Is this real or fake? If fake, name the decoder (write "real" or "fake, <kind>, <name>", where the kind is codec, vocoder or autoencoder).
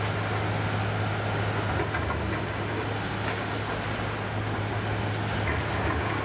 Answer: real